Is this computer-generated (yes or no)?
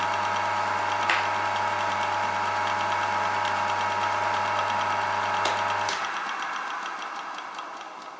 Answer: no